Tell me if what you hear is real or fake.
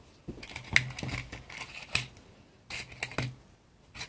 real